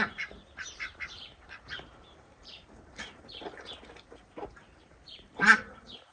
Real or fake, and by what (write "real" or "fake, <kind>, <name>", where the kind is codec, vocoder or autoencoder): fake, vocoder, BigVGAN v2